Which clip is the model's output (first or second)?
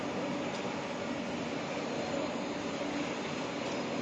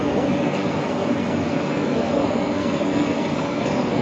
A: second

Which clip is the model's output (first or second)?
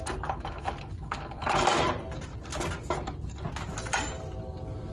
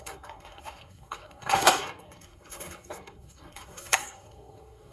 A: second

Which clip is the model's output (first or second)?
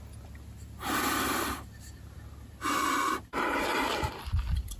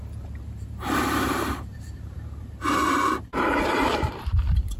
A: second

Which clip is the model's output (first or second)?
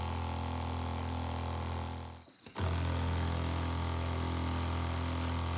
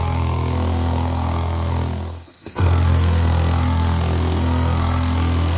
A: second